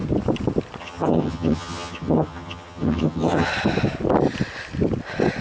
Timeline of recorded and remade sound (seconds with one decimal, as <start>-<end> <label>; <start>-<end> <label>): 0.0-0.8 recorded; 0.8-3.5 remade; 3.5-5.4 recorded

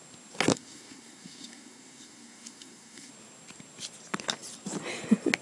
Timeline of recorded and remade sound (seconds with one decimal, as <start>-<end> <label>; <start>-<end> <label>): 0.0-0.5 recorded; 0.5-3.1 remade; 3.1-5.4 recorded

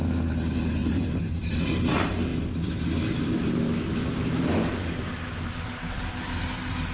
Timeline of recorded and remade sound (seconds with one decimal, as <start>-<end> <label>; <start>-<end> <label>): 0.0-0.8 recorded; 0.8-1.9 remade; 1.9-3.9 recorded; 3.9-6.0 remade; 6.0-6.9 recorded

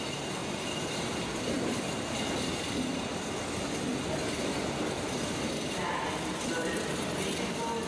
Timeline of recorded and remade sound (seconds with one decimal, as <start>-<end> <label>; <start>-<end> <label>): 0.0-0.4 recorded; 0.4-2.7 remade; 2.7-3.9 recorded; 3.9-6.9 remade; 6.9-7.9 recorded

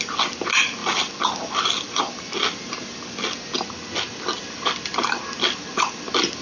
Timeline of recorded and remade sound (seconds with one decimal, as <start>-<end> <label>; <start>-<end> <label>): 0.0-0.8 recorded; 0.8-2.0 remade; 2.0-6.4 recorded

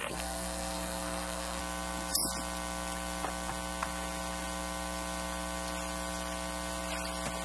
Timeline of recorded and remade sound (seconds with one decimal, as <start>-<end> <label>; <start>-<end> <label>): 0.0-1.6 remade; 1.6-7.4 recorded

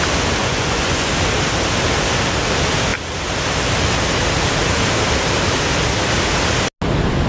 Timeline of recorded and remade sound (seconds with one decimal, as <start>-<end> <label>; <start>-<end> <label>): 0.0-0.4 recorded; 0.4-1.1 remade; 1.1-7.3 recorded

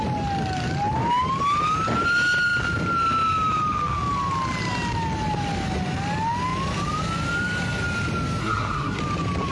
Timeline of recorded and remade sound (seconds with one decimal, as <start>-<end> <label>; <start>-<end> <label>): 0.0-8.4 recorded; 8.4-9.0 remade; 9.0-9.5 recorded